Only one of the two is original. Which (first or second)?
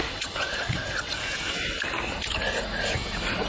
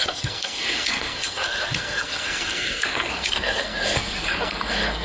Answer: first